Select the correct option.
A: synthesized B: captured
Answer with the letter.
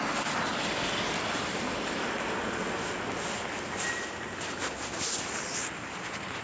B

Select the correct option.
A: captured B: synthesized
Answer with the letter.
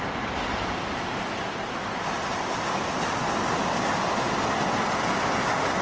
A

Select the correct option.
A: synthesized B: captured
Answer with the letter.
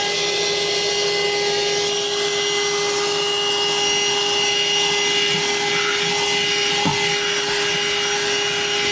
B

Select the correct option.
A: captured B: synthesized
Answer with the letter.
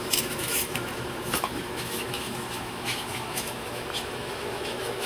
B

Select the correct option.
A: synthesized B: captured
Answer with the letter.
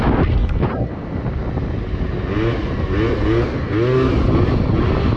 B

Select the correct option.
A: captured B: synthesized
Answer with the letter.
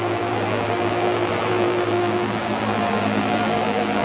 B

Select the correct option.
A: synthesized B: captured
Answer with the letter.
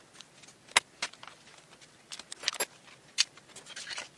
B